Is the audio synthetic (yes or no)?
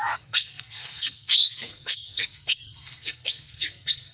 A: yes